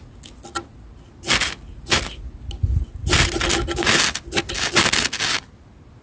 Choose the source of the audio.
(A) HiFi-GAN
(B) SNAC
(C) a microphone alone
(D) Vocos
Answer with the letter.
C